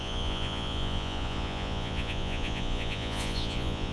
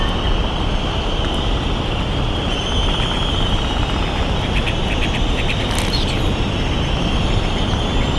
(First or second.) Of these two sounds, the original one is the second